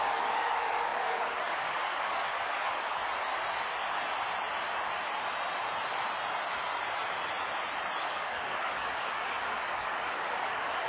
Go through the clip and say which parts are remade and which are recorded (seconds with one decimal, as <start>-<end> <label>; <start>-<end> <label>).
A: 0.0-3.0 remade; 3.0-8.0 recorded; 8.0-10.9 remade